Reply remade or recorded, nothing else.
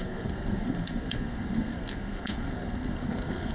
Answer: remade